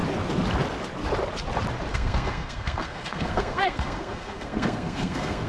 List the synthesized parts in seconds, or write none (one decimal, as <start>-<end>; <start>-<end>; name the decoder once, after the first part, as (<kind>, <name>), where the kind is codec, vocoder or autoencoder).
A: 1.9-5.5 (codec, SNAC)